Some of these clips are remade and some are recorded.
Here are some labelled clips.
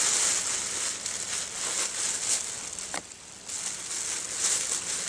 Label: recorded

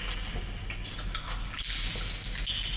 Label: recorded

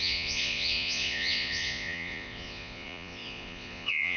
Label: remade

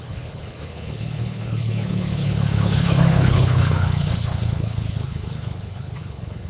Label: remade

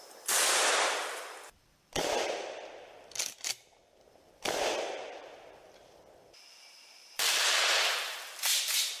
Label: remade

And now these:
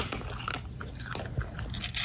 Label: recorded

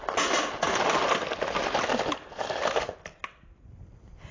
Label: recorded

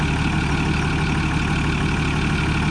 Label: recorded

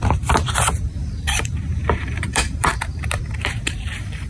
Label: remade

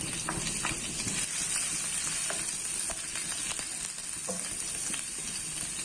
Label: recorded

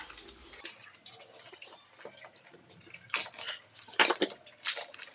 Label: recorded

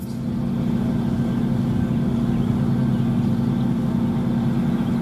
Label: recorded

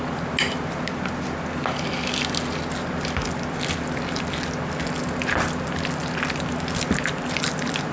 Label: recorded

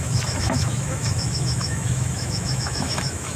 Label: remade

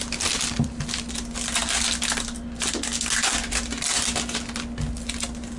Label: recorded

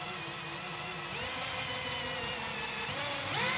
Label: recorded